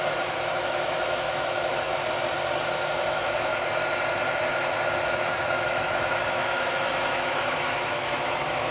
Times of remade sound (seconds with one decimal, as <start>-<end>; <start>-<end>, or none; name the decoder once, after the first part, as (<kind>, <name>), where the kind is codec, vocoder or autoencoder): 0.0-1.9 (autoencoder, DAC-VAE); 2.9-3.5; 5.0-8.7